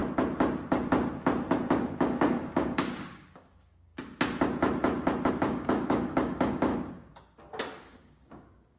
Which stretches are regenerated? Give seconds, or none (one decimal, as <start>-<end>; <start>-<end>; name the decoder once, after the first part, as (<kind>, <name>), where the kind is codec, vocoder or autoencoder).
1.8-3.9 (codec, DAC); 5.3-6.7; 7.8-8.8